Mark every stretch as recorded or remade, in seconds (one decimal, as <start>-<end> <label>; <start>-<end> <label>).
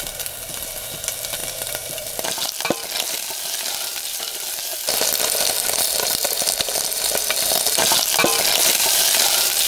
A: 0.0-8.3 recorded; 8.3-9.0 remade; 9.0-9.7 recorded